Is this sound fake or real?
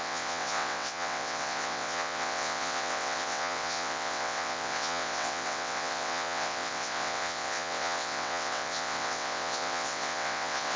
fake